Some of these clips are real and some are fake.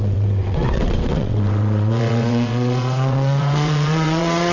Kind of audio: fake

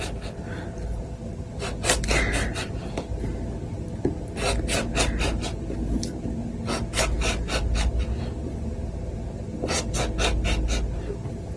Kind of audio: real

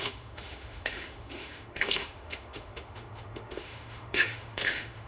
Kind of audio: fake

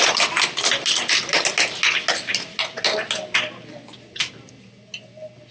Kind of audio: real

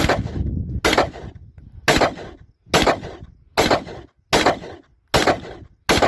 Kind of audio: real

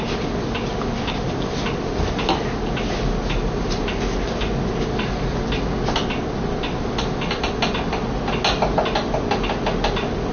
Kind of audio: real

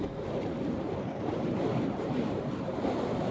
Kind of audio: real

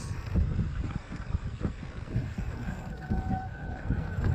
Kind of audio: fake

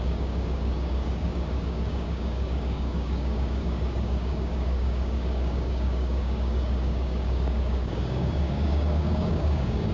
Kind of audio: fake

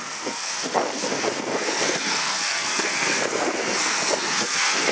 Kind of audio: fake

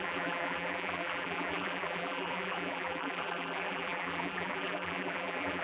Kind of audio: fake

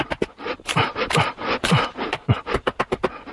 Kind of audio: real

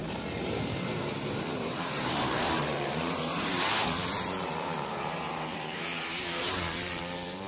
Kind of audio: fake